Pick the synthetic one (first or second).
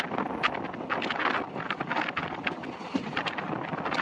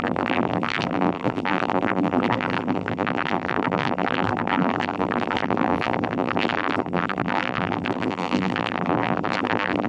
second